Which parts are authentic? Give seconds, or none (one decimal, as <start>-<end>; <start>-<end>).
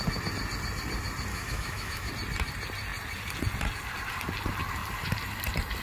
0.0-1.3; 2.1-5.8